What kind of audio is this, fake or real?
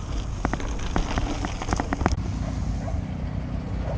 real